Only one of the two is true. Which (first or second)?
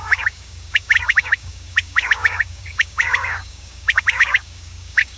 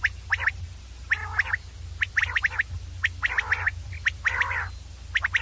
second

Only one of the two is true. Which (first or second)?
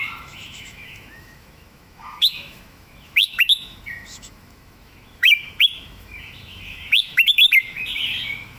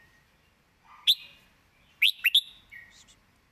second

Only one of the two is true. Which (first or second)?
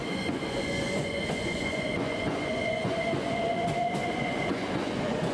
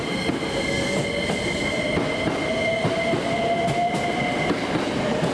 second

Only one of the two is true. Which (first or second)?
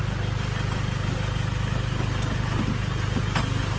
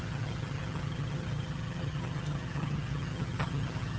first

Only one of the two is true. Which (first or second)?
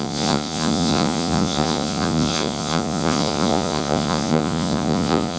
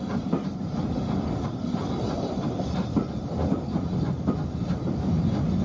second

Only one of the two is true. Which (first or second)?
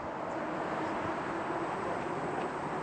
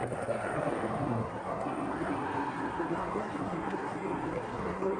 first